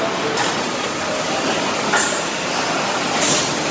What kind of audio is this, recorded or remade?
recorded